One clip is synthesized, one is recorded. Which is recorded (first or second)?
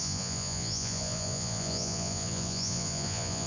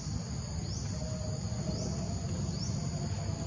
second